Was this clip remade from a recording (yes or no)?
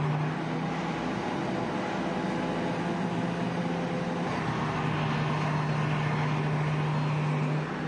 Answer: no